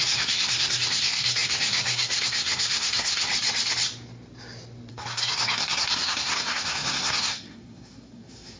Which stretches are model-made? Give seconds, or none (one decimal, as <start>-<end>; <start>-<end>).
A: 0.0-3.3; 4.9-8.6